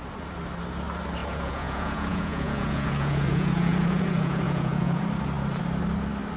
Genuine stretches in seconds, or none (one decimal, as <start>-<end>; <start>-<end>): 0.0-1.2; 5.0-6.4